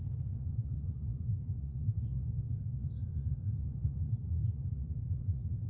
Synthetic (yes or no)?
yes